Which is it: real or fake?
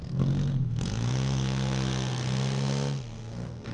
fake